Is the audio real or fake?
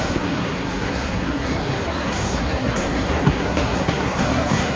fake